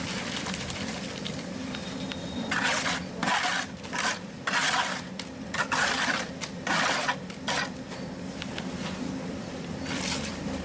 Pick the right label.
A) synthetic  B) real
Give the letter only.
A